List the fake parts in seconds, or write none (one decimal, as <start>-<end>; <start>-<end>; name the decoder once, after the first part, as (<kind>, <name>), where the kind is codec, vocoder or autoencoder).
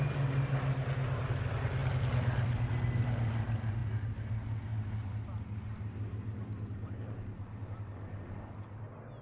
none